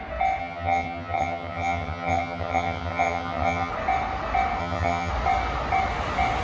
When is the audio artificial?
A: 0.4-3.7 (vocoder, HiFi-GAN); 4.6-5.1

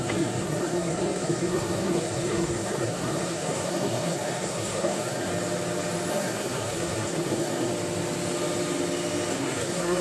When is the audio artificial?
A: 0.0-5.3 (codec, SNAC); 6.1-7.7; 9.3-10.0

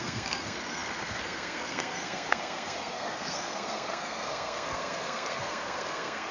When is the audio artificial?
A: 0.0-6.3 (codec, SNAC)